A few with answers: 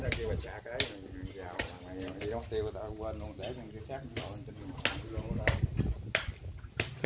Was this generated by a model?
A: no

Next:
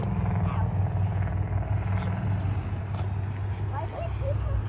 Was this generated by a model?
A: no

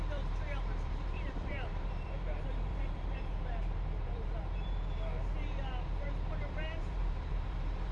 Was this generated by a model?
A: yes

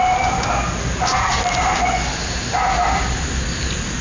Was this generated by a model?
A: no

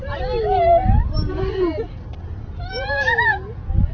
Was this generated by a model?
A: no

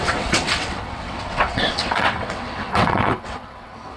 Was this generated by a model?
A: yes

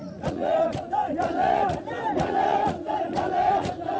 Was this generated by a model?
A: yes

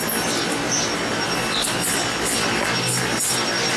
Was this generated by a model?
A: no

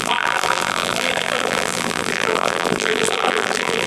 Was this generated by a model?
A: yes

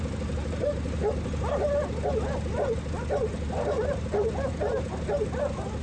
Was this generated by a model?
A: no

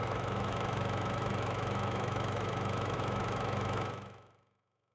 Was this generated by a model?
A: yes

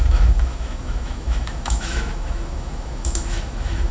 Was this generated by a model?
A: yes